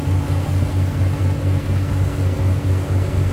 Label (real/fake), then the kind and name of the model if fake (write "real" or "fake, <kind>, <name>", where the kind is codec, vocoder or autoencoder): fake, codec, SNAC